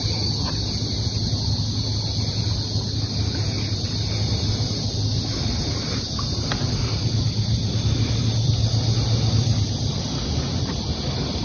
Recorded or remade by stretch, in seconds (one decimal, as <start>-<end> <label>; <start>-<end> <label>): 0.0-11.4 recorded